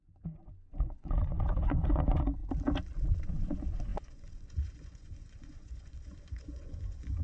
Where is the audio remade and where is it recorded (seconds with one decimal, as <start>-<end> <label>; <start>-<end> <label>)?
0.0-2.4 remade; 2.4-3.3 recorded; 3.3-7.2 remade